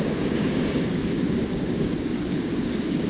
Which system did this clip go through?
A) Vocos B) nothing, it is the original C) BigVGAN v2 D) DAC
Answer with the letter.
D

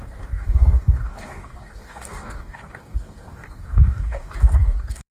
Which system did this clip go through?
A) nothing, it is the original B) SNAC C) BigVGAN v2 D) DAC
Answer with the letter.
D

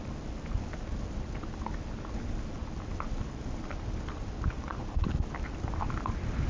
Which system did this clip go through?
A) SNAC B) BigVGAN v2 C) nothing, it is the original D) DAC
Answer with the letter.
C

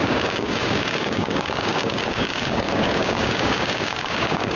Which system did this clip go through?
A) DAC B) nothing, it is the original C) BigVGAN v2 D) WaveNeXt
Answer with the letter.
A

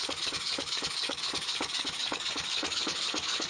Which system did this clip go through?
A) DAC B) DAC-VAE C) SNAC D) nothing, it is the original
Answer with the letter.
A